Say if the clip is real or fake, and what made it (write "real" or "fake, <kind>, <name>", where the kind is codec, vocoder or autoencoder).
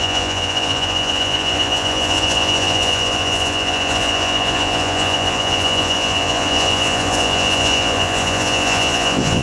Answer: fake, vocoder, Vocos